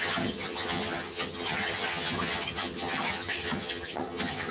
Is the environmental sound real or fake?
fake